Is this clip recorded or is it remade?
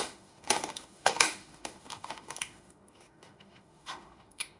remade